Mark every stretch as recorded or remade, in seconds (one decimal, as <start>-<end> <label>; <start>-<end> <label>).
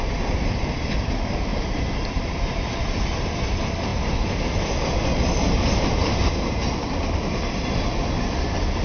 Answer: 0.0-1.5 remade; 1.5-2.1 recorded; 2.1-8.8 remade